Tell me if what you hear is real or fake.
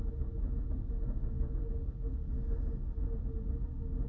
real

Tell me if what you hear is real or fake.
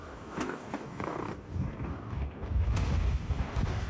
fake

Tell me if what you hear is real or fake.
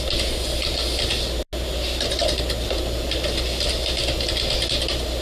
real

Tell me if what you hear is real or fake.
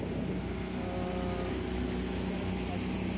real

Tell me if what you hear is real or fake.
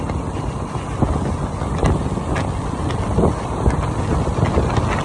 real